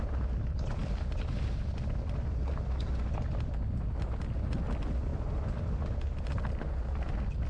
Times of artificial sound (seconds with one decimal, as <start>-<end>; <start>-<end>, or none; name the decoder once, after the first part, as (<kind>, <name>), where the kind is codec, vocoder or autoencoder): none